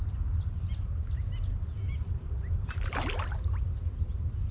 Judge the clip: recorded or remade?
recorded